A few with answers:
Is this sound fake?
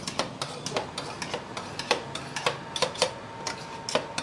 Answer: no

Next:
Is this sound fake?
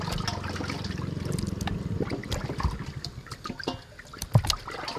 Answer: no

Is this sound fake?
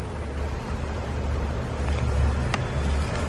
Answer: no